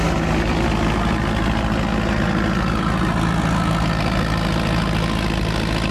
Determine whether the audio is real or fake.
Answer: real